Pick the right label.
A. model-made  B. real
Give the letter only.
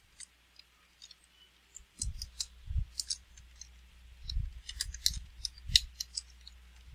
B